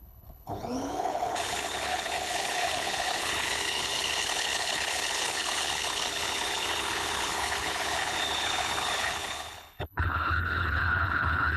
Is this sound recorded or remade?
remade